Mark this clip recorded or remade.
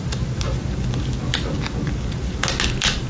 recorded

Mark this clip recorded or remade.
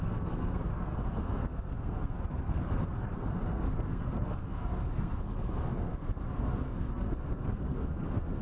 remade